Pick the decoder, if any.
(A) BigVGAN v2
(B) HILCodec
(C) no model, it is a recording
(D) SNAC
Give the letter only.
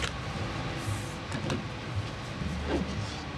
C